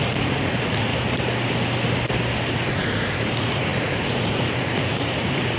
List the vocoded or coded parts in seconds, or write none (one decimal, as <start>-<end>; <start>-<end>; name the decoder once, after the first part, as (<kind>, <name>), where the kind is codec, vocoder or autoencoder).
0.0-0.9 (vocoder, Vocos); 2.5-5.6